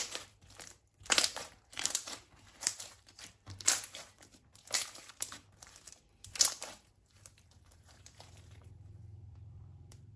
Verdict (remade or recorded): remade